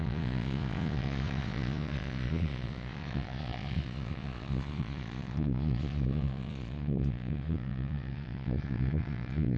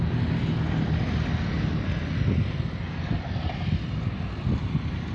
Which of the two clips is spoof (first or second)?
first